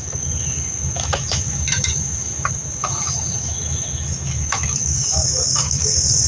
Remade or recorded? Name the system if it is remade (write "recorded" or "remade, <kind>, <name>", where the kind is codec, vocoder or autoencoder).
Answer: remade, autoencoder, DAC-VAE